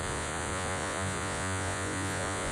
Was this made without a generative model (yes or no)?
no